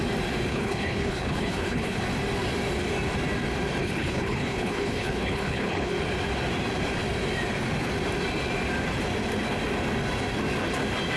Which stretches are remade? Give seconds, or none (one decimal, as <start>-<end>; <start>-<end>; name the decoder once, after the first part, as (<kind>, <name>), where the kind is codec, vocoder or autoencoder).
0.5-2.0 (codec, HILCodec); 3.8-5.9